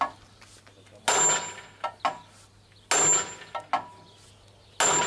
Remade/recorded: recorded